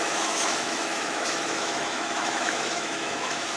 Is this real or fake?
fake